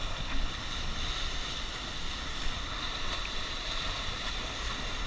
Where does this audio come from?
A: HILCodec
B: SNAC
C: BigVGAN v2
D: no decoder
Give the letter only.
D